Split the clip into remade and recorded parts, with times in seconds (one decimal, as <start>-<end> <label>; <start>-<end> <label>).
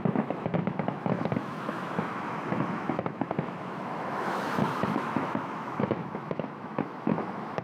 0.0-7.6 remade